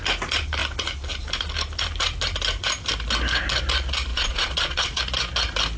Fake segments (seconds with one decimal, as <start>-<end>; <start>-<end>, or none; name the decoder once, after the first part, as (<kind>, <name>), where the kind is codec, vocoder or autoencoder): 4.1-5.0 (vocoder, Vocos)